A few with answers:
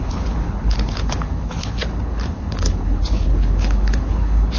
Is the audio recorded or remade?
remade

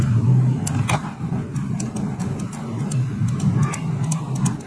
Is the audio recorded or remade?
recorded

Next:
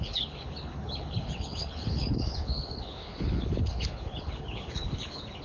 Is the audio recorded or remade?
remade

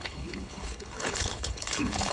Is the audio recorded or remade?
remade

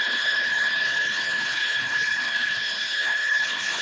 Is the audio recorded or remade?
remade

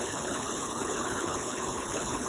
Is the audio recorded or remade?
remade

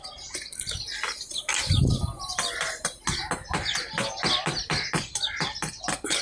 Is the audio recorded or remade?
recorded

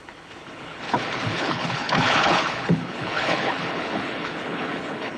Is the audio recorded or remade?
remade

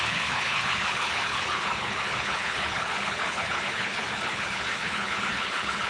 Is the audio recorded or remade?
remade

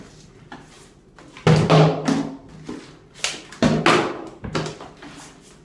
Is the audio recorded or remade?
recorded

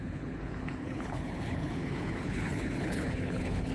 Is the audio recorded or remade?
remade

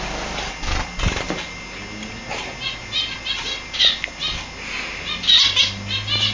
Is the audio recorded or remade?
recorded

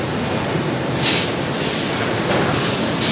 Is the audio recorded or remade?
recorded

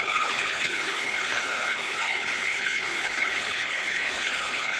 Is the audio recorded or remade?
remade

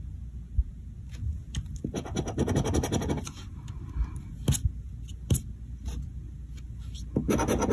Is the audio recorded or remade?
recorded